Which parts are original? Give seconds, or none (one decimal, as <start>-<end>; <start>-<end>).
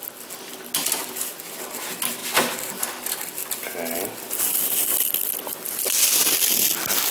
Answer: 0.0-7.1